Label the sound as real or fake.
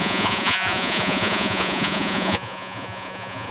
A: fake